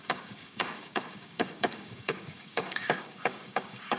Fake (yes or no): yes